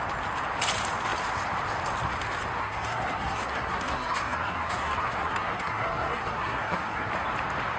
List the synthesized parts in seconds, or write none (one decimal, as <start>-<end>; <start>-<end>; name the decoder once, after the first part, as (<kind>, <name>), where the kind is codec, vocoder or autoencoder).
2.6-7.1 (codec, SNAC)